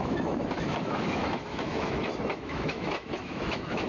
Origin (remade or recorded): remade